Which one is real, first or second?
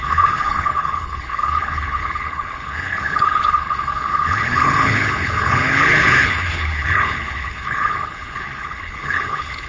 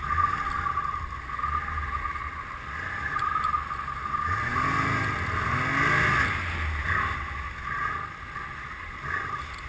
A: second